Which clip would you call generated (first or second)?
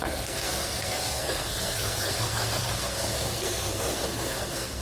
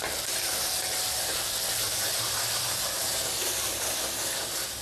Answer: first